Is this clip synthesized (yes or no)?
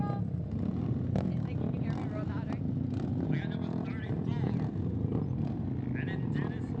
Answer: no